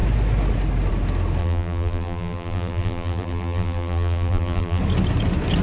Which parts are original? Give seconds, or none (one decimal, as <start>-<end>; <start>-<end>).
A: 0.0-1.4; 4.8-5.6